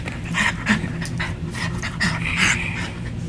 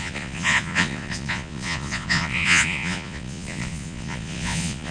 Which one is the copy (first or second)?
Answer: second